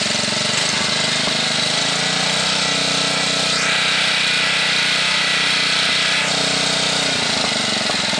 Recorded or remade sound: recorded